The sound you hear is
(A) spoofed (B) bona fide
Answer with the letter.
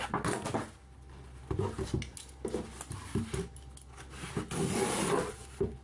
B